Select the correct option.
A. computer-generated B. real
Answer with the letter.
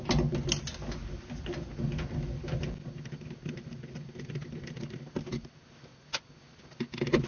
B